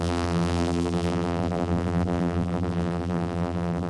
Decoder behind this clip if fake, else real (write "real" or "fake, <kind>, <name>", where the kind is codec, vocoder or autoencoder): fake, vocoder, BigVGAN v2